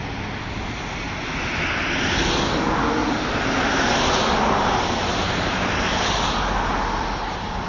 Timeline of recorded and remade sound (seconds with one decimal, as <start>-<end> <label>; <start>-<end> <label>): 0.0-3.0 recorded; 3.0-5.8 remade; 5.8-7.7 recorded